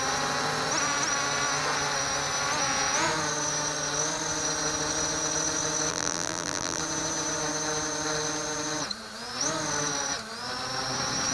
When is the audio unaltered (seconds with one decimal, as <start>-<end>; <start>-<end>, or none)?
0.0-5.9; 6.8-11.3